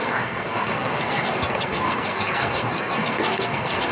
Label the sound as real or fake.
fake